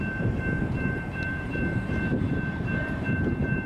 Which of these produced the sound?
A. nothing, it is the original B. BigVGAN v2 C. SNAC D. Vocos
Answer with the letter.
B